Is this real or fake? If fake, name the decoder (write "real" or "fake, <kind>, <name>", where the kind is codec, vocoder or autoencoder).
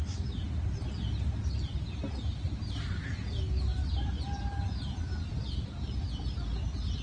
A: real